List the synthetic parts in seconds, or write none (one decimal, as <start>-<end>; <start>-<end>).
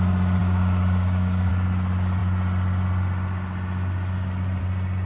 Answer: 0.4-1.5